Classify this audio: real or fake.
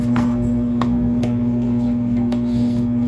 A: fake